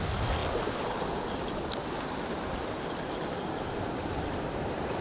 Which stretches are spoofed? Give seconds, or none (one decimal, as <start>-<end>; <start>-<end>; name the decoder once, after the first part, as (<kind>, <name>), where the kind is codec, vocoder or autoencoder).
none